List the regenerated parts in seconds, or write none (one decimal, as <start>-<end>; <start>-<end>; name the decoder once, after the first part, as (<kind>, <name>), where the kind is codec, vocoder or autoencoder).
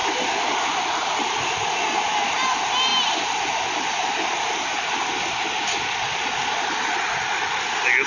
none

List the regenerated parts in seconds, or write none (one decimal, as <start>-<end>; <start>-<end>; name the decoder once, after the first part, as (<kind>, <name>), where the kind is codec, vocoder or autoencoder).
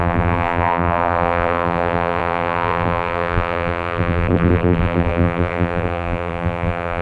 0.0-7.0 (vocoder, BigVGAN v2)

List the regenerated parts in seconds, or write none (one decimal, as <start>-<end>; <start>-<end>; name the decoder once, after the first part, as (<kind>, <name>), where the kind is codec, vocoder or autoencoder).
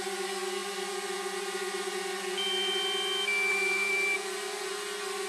0.6-2.1 (vocoder, BigVGAN v2); 3.5-4.7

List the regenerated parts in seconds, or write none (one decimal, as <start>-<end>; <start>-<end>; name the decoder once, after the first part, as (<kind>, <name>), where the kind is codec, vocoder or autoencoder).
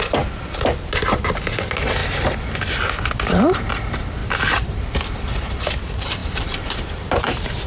2.0-3.6 (vocoder, BigVGAN v2); 4.2-5.5; 6.2-6.7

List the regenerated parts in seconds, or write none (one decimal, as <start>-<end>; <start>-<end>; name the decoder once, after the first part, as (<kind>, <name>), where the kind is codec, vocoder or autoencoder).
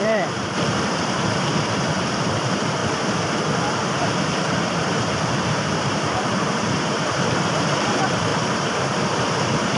0.0-2.8 (vocoder, BigVGAN v2); 3.6-9.8